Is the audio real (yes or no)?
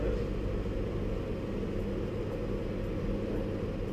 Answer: yes